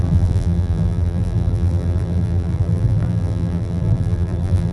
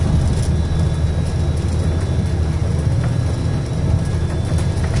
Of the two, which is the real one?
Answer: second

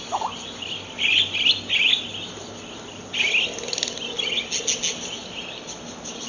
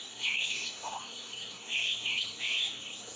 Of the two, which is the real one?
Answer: first